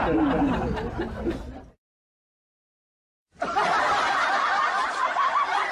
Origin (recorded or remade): recorded